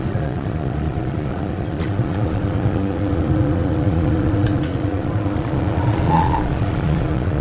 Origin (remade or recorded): remade